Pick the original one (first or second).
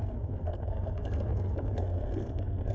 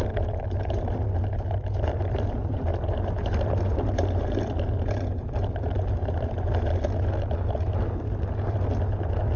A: second